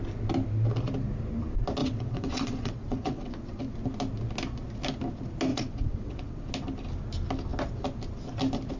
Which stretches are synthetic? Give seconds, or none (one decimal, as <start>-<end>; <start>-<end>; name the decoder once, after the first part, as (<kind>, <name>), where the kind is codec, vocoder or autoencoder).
1.8-3.6 (vocoder, WaveNeXt); 5.5-6.5